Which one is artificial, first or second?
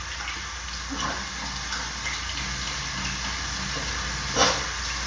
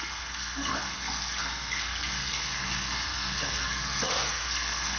second